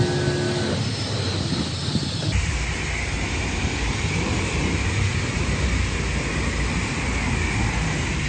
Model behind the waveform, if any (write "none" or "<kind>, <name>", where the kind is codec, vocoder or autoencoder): none